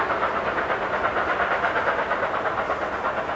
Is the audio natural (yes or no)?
yes